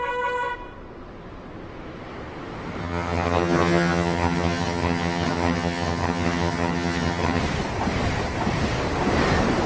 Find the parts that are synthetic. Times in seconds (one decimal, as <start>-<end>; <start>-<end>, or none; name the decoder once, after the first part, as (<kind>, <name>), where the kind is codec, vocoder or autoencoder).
2.8-7.4 (vocoder, HiFi-GAN)